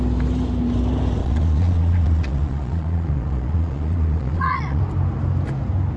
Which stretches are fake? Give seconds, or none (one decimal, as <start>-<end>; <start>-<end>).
1.2-4.8